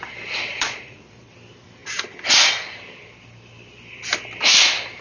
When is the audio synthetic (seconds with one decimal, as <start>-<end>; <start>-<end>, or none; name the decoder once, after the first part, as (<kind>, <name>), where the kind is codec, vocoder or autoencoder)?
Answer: 0.5-1.3 (vocoder, Vocos)